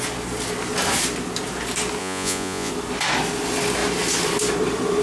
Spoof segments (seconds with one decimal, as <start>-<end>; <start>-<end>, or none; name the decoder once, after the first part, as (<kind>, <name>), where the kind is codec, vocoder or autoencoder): 2.0-2.7 (vocoder, Vocos)